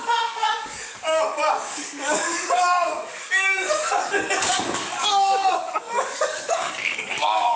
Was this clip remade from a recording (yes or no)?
yes